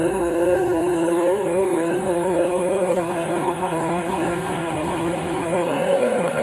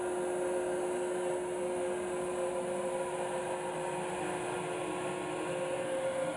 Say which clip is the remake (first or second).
first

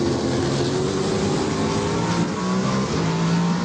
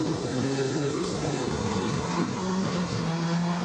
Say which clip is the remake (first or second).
second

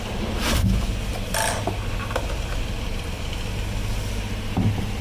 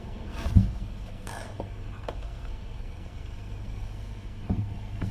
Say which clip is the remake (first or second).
second